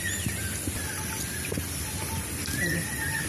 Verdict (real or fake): real